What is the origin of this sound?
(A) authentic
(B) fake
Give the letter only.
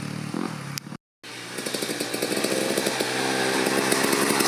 A